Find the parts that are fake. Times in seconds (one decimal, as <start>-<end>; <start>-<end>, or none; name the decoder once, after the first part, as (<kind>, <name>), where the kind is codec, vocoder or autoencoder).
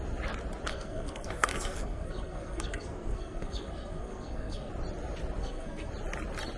0.7-4.7 (codec, SNAC); 5.4-5.9